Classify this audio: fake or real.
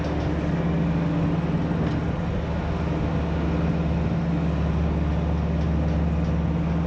real